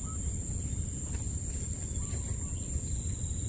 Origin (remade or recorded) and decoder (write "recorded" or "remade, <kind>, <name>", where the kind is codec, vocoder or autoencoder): recorded